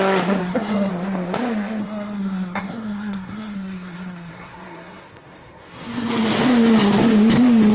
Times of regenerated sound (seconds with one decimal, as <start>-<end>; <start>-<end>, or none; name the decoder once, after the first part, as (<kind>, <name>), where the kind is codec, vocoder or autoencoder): 0.4-0.9 (codec, SNAC); 1.8-6.1